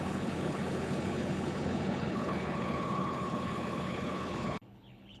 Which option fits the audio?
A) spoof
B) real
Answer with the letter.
A